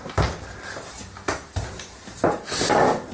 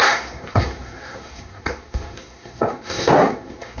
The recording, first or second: first